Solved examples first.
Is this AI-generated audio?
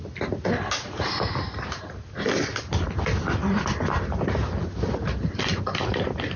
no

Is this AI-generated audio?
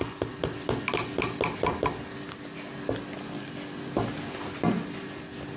no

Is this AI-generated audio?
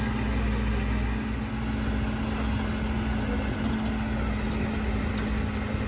no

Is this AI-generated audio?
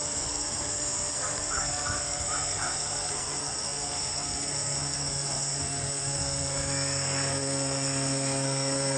yes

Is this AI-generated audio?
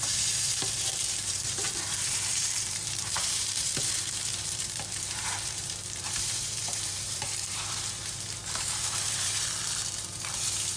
yes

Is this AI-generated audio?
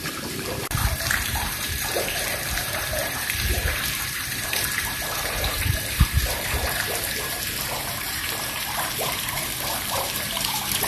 yes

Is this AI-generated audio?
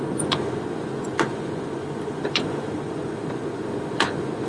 yes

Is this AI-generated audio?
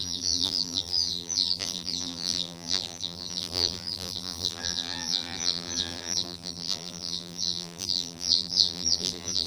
yes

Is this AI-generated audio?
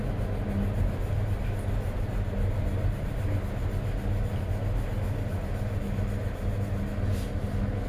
no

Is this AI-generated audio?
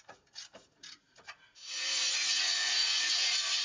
yes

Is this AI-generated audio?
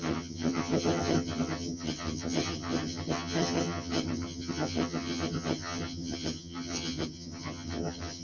yes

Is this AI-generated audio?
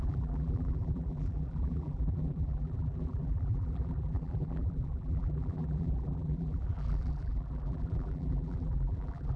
yes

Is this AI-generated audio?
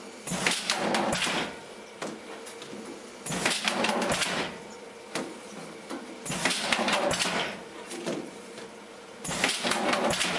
no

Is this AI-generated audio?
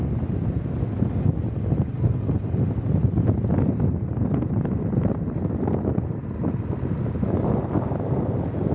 no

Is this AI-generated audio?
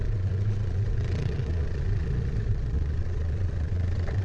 yes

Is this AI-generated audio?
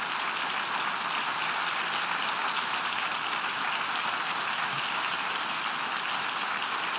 no